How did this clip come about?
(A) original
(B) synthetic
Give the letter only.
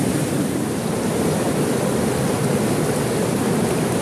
A